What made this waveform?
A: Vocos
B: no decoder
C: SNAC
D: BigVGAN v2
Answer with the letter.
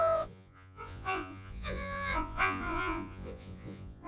A